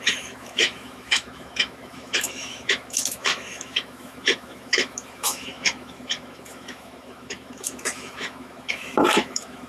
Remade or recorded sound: remade